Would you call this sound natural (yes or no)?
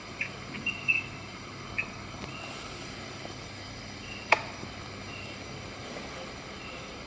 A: yes